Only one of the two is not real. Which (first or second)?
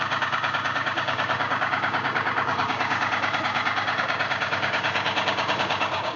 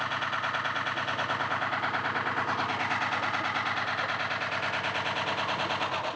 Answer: first